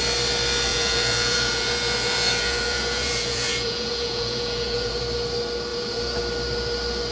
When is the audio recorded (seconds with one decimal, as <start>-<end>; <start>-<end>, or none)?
0.0-0.7; 5.0-5.7; 6.2-7.1